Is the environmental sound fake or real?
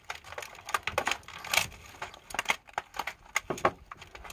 real